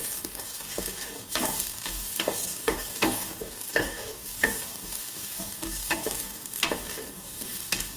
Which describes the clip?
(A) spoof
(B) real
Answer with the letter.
A